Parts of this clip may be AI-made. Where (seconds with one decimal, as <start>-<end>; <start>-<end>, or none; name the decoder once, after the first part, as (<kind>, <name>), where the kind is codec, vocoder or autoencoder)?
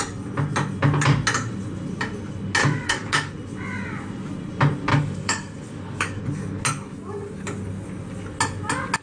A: 2.6-3.3 (codec, DAC); 4.9-6.2